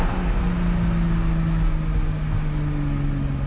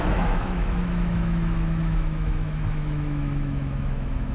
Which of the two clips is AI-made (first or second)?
second